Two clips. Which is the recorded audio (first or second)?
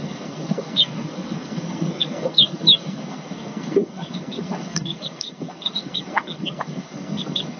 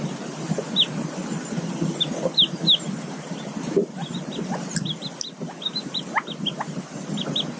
second